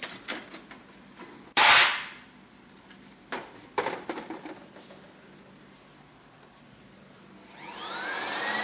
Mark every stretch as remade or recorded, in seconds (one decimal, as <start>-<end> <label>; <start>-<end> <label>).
0.0-8.6 recorded